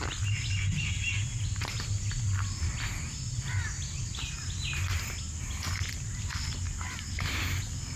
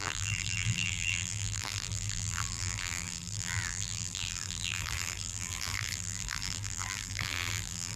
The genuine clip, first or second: first